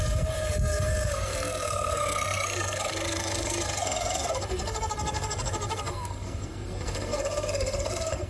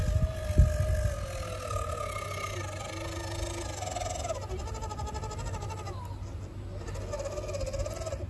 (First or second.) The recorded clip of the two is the second